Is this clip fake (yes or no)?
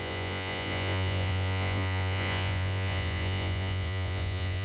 yes